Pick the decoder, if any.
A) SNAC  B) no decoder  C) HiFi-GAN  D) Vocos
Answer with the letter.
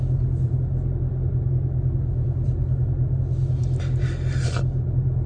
B